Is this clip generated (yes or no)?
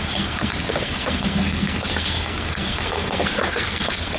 yes